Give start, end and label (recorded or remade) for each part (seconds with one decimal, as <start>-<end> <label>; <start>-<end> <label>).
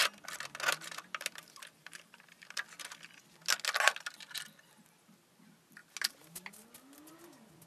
0.0-1.8 recorded; 1.8-2.6 remade; 2.6-7.7 recorded